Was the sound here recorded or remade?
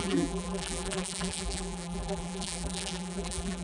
remade